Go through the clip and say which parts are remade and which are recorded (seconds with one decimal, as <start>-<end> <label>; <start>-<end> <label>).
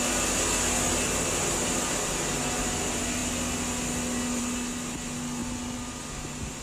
0.0-6.6 recorded